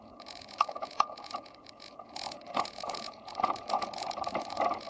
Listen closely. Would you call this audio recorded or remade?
remade